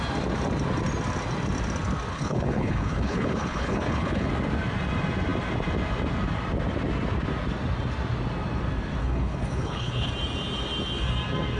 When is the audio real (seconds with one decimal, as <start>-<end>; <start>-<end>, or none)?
0.0-2.1; 4.3-9.0; 10.1-11.6